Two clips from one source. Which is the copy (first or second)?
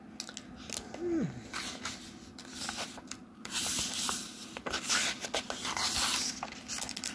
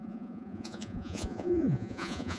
second